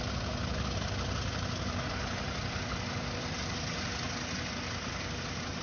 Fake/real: real